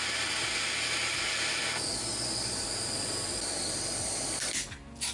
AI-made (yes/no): no